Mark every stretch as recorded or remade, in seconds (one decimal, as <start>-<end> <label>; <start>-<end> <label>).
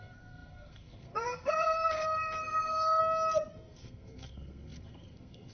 0.0-3.0 remade; 3.0-3.5 recorded; 3.5-5.5 remade